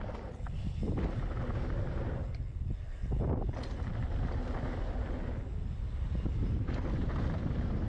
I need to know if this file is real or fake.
real